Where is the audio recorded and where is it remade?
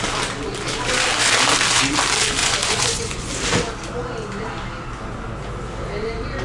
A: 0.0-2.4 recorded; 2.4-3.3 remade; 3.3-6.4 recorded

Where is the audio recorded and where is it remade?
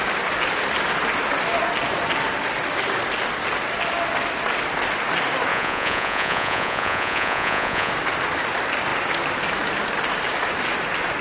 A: 0.0-5.5 recorded; 5.5-7.9 remade; 7.9-11.2 recorded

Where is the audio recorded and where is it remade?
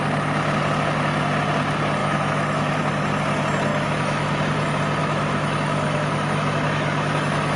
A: 0.0-2.0 recorded; 2.0-2.8 remade; 2.8-3.7 recorded; 3.7-4.4 remade; 4.4-5.0 recorded; 5.0-7.6 remade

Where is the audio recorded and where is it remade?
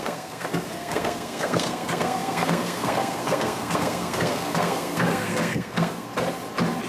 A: 0.0-6.1 remade; 6.1-6.9 recorded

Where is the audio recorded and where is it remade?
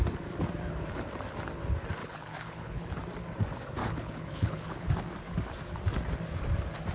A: 0.0-2.0 recorded; 2.0-2.9 remade; 2.9-3.8 recorded; 3.8-4.9 remade; 4.9-6.9 recorded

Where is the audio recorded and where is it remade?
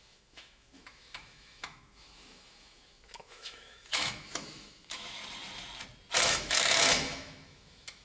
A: 0.0-5.2 remade; 5.2-6.2 recorded; 6.2-8.0 remade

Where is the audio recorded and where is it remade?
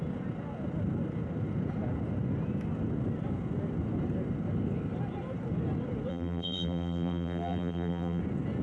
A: 0.0-6.1 recorded; 6.1-8.2 remade; 8.2-8.6 recorded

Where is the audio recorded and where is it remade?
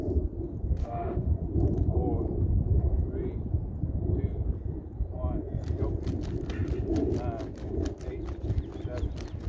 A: 0.0-0.8 recorded; 0.8-1.3 remade; 1.3-9.5 recorded